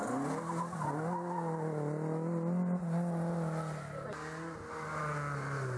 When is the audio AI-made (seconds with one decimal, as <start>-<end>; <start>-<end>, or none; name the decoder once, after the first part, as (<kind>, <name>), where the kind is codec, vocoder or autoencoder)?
none